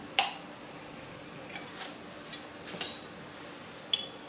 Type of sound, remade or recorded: recorded